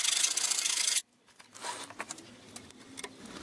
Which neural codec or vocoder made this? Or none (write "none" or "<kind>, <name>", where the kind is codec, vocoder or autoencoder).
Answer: none